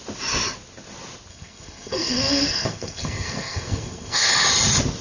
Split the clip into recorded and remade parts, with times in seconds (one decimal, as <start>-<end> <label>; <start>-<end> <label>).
0.0-1.3 recorded; 1.3-4.3 remade; 4.3-5.0 recorded